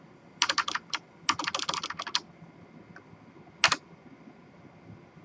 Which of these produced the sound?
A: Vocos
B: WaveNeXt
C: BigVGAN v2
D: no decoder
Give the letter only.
D